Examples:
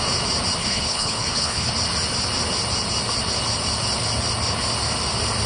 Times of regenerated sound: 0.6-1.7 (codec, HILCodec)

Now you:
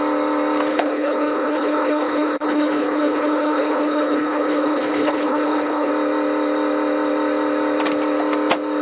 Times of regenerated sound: 0.7-5.9 (codec, HILCodec)

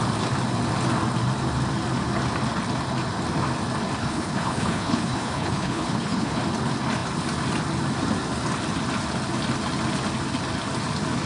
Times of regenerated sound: 4.0-6.4 (codec, HILCodec)

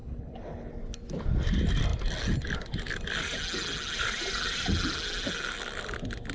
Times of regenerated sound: 0.0-0.7 (codec, HILCodec)

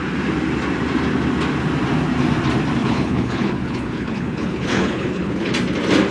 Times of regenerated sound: 2.8-5.5 (codec, HILCodec)